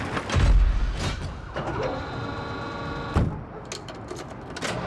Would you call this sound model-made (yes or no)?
no